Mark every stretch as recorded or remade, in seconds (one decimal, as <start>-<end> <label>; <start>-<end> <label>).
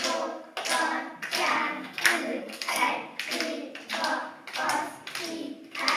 0.0-1.5 recorded; 1.5-2.9 remade; 2.9-6.0 recorded